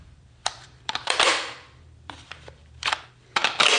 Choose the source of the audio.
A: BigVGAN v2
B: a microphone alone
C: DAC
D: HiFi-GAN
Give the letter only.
A